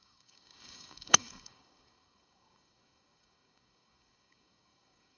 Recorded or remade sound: remade